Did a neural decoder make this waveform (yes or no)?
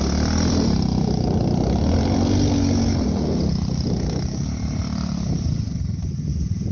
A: no